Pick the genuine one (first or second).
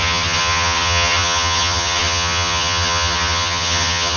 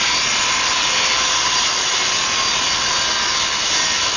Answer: second